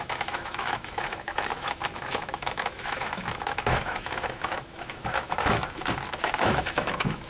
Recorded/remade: remade